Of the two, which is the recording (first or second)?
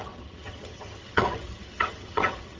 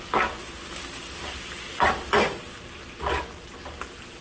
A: second